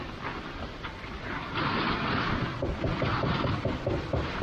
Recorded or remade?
remade